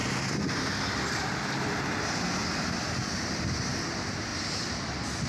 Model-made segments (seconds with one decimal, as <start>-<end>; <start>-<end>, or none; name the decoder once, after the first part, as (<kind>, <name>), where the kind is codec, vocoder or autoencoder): 0.0-1.8 (vocoder, BigVGAN v2)